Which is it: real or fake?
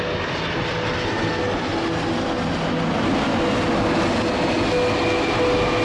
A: real